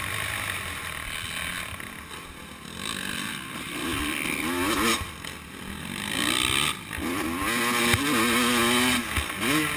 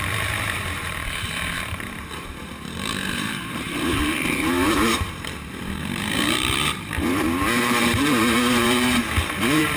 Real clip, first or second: first